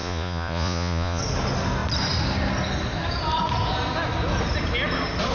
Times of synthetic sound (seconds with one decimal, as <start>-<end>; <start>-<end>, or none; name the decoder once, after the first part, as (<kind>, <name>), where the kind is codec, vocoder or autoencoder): 0.0-1.2 (vocoder, Vocos)